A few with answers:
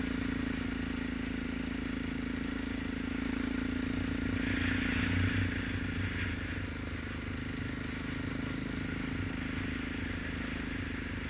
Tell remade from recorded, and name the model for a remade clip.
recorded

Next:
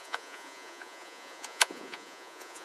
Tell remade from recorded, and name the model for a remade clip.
remade, vocoder, Vocos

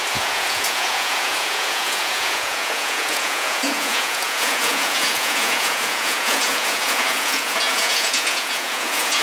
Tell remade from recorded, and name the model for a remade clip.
remade, vocoder, Vocos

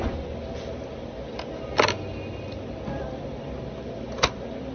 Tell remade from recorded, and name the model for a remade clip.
recorded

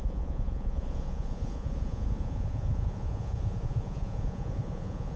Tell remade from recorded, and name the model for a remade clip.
remade, vocoder, Vocos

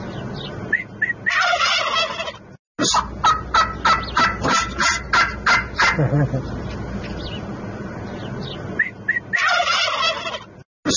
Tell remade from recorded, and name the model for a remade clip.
recorded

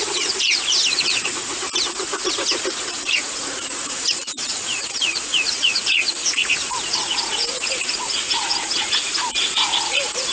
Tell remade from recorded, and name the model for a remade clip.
remade, vocoder, Vocos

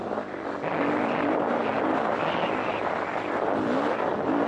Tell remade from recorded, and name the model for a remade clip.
recorded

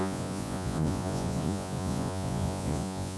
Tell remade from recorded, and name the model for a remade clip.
remade, vocoder, Vocos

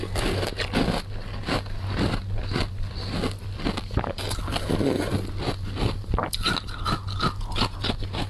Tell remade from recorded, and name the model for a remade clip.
recorded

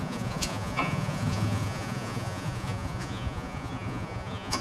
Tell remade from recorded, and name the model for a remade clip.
remade, vocoder, Vocos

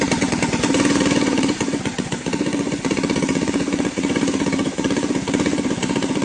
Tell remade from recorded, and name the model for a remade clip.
remade, vocoder, Vocos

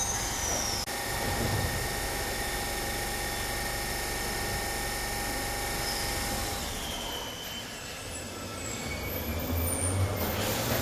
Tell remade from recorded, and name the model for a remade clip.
recorded